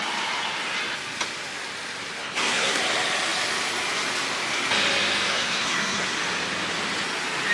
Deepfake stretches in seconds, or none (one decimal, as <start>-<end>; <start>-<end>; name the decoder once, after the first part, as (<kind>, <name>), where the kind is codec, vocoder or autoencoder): 2.2-2.8 (codec, SNAC); 5.3-6.2